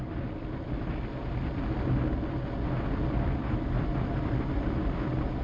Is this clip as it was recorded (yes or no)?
yes